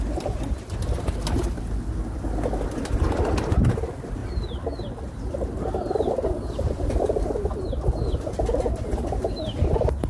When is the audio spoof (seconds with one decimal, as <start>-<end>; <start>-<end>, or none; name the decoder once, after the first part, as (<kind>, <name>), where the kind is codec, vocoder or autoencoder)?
none